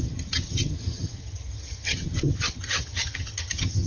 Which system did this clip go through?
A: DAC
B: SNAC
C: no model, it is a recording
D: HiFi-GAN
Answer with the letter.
D